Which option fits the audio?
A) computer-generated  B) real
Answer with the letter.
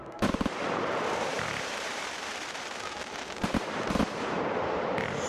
A